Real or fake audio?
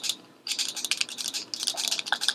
real